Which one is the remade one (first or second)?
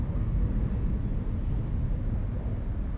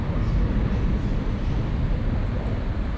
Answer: second